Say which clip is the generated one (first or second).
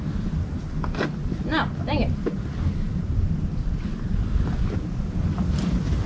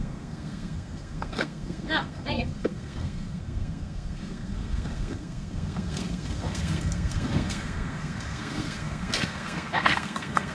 second